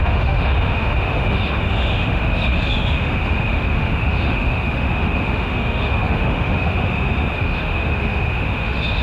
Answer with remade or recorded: remade